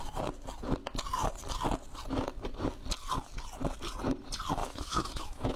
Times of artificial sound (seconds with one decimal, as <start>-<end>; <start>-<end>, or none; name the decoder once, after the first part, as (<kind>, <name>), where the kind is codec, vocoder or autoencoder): 4.6-5.6 (autoencoder, DAC-VAE)